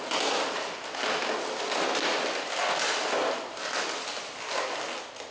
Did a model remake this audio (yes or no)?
no